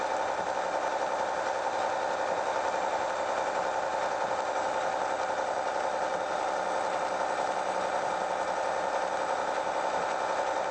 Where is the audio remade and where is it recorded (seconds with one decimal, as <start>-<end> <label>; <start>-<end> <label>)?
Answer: 0.0-10.7 recorded

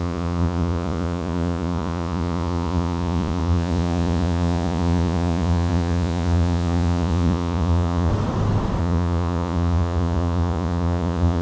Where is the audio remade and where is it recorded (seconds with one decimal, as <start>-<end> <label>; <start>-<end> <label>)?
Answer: 0.0-8.1 remade; 8.1-8.8 recorded; 8.8-11.4 remade

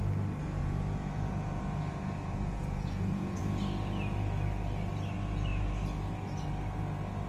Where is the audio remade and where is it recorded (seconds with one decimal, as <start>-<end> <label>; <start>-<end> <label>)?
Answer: 0.0-0.6 recorded; 0.6-3.4 remade; 3.4-7.3 recorded

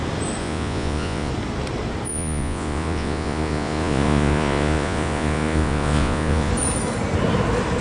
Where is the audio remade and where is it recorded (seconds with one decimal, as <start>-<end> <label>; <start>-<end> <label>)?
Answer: 0.0-0.4 recorded; 0.4-1.3 remade; 1.3-2.1 recorded; 2.1-6.5 remade; 6.5-7.8 recorded